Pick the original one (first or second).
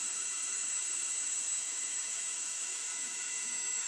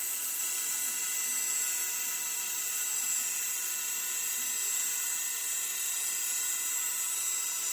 second